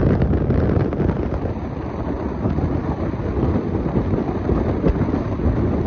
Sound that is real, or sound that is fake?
real